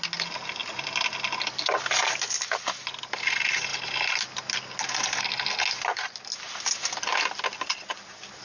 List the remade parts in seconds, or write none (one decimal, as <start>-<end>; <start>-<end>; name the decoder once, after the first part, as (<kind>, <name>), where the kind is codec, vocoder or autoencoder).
none